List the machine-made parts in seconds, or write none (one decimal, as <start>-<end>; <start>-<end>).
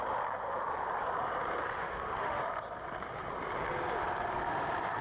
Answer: 1.8-2.4